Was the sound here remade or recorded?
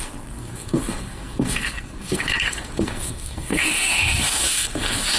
remade